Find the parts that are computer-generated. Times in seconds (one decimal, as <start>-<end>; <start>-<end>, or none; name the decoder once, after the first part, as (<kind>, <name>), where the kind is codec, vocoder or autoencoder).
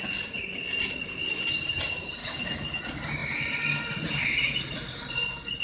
2.2-2.8 (autoencoder, DAC-VAE)